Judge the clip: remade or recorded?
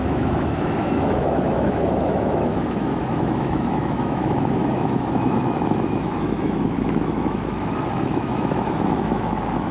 remade